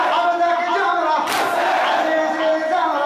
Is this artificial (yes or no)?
no